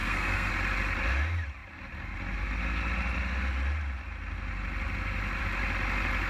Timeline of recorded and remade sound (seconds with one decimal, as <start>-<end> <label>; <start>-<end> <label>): 0.0-0.5 remade; 0.5-6.3 recorded